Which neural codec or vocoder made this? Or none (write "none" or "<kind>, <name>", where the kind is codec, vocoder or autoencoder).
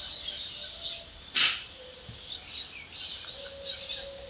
none